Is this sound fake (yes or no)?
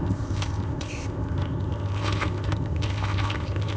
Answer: yes